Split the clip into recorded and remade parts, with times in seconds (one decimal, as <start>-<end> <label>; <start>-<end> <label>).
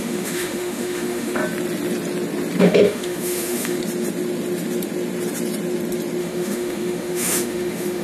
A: 0.0-1.4 remade; 1.4-2.6 recorded; 2.6-3.8 remade; 3.8-6.2 recorded; 6.2-8.0 remade